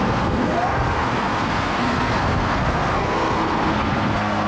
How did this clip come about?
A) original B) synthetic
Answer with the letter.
B